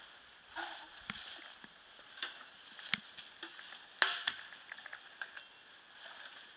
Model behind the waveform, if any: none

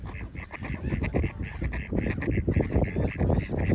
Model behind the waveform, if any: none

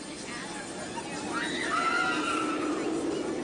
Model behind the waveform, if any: none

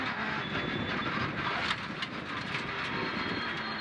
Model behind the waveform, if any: none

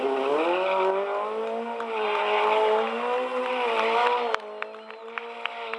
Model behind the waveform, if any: none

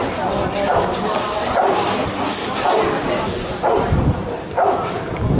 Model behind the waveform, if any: none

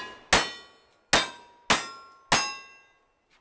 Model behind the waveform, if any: none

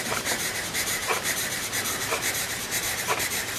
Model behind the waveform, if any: vocoder, BigVGAN v2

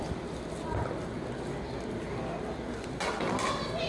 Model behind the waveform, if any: none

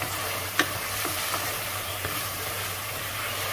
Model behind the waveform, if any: vocoder, BigVGAN v2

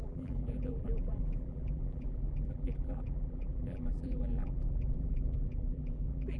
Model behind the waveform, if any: vocoder, BigVGAN v2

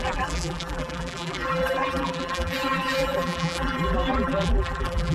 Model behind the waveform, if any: vocoder, BigVGAN v2